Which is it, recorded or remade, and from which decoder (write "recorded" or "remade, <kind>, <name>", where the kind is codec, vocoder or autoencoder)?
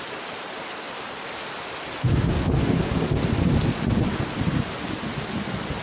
recorded